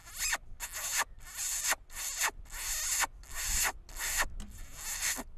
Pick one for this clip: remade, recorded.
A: recorded